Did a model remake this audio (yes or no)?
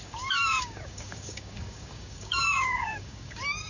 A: yes